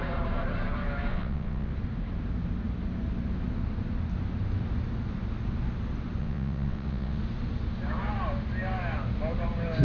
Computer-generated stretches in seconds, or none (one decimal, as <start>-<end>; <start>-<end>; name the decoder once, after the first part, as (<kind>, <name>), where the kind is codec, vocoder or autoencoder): 1.1-1.7 (vocoder, WaveNeXt); 6.2-7.2